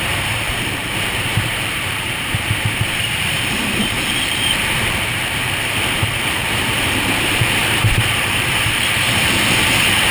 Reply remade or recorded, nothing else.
remade